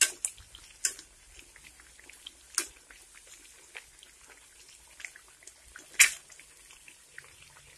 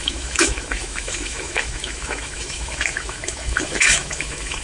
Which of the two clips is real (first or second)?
first